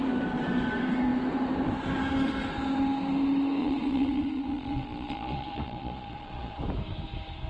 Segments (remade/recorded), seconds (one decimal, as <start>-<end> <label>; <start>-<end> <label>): 0.0-3.6 recorded; 3.6-6.6 remade; 6.6-7.5 recorded